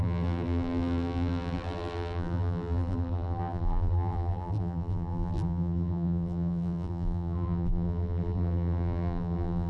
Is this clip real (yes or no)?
no